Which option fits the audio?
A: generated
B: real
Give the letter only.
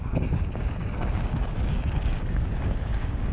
A